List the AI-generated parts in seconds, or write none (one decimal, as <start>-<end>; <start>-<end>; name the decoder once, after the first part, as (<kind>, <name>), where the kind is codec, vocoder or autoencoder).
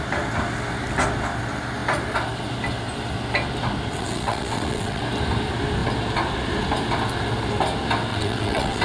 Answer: 3.9-5.0 (vocoder, WaveNeXt); 8.1-8.8